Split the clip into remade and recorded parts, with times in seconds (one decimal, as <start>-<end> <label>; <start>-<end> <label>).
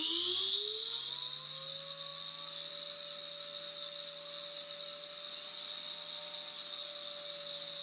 0.0-7.8 recorded